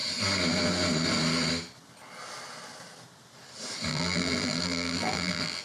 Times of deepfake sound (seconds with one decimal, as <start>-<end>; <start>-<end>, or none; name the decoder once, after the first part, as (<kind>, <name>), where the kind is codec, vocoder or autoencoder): 3.9-5.6 (vocoder, BigVGAN v2)